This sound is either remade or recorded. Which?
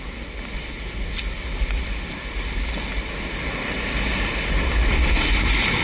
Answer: recorded